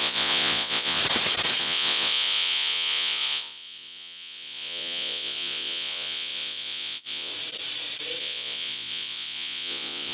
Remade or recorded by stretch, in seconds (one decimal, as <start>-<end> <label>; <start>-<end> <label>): 0.0-1.0 remade; 1.0-1.6 recorded; 1.6-7.3 remade; 7.3-8.2 recorded; 8.2-10.1 remade

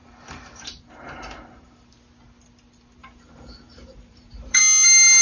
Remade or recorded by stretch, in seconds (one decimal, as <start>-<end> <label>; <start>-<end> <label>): 0.0-1.9 remade; 1.9-3.0 recorded; 3.0-4.6 remade; 4.6-5.2 recorded